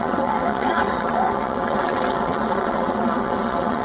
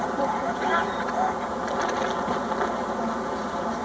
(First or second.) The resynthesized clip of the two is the first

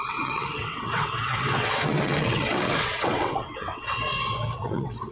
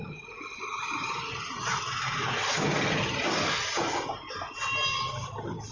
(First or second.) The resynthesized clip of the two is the first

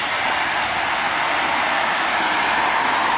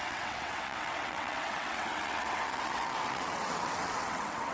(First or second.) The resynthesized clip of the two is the second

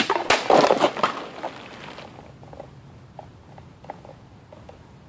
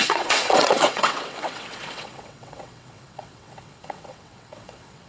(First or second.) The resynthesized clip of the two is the second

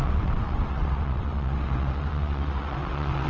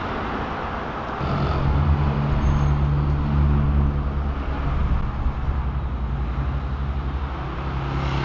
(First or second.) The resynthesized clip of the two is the first